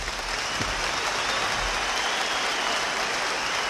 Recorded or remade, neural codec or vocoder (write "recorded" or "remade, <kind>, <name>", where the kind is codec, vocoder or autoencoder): recorded